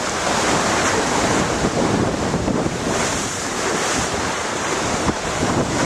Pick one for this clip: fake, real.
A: fake